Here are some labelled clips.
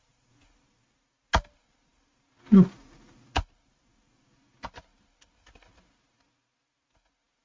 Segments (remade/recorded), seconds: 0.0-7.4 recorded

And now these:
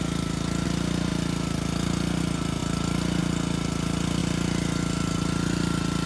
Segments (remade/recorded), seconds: 0.0-6.1 recorded

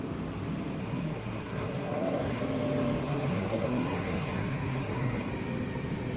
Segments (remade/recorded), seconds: 0.0-0.8 recorded; 0.8-2.4 remade; 2.4-3.1 recorded; 3.1-5.3 remade; 5.3-6.2 recorded

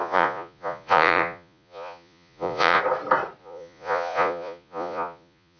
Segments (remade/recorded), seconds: 0.0-2.8 remade; 2.8-3.4 recorded; 3.4-5.6 remade